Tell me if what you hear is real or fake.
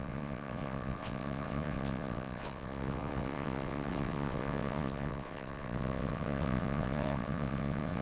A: fake